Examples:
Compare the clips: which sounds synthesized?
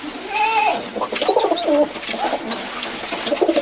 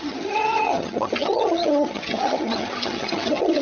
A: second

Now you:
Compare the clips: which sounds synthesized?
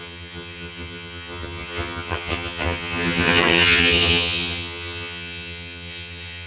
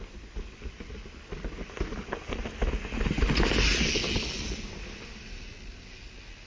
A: first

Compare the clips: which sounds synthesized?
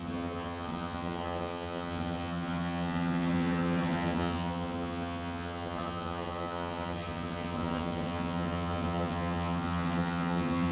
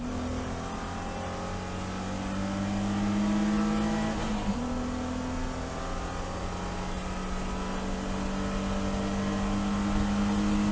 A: first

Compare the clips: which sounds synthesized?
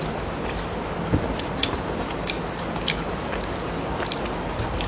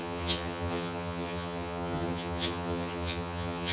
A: second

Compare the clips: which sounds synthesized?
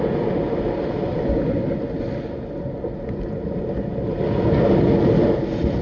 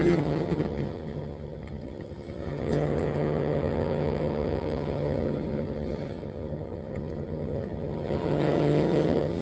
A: second